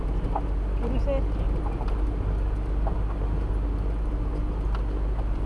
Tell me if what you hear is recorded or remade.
recorded